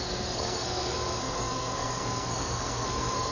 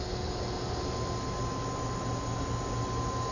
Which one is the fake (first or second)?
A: first